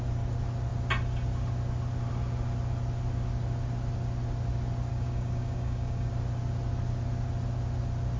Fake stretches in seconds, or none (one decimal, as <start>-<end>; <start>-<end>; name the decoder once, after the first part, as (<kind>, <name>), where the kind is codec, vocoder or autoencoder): 4.9-6.1 (codec, DAC)